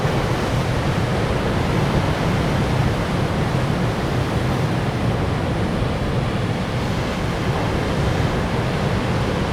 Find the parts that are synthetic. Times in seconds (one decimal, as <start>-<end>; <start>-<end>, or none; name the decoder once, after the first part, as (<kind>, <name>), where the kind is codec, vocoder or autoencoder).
2.8-3.5 (vocoder, BigVGAN v2)